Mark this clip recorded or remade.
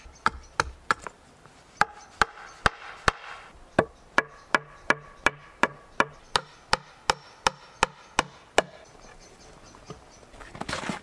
recorded